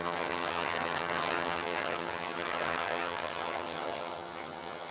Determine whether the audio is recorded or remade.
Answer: remade